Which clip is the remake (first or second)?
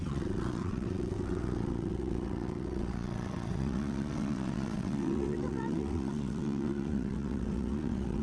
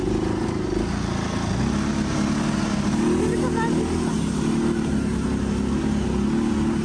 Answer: first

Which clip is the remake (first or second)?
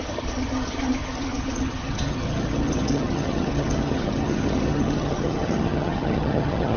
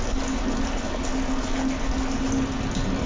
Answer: first